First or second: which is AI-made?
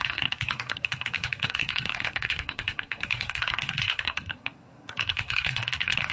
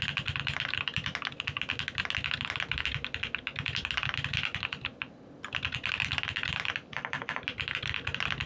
first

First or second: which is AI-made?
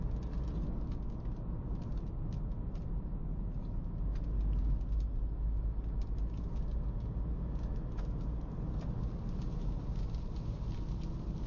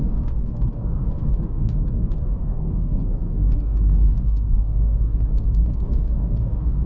second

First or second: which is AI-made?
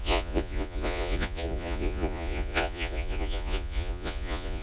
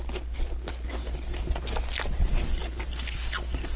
first